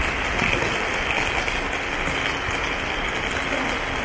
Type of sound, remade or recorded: recorded